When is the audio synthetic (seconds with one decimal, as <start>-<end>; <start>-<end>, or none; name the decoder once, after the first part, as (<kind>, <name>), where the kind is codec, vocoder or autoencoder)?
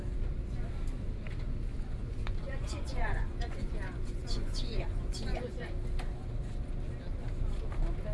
1.7-5.7 (vocoder, Vocos)